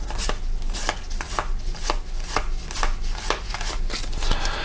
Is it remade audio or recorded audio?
recorded